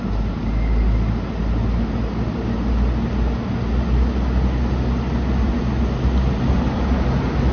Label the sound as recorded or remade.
recorded